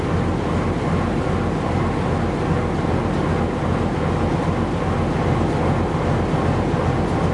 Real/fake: real